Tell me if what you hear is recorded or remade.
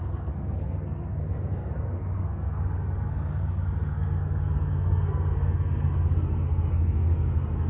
remade